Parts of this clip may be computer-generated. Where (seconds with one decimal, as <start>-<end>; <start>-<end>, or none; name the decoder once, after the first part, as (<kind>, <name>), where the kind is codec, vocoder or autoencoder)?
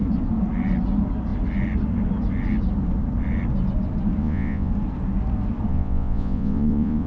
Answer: 4.2-4.7 (vocoder, Vocos); 5.7-7.1